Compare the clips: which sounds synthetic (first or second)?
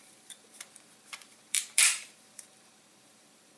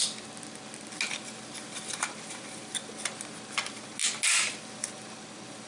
first